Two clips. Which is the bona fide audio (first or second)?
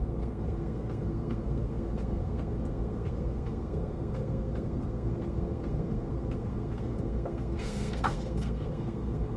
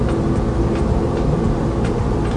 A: second